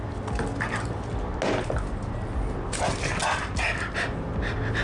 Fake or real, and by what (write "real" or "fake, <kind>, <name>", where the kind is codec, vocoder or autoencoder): real